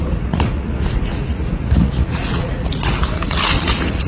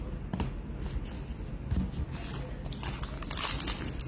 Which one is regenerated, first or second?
first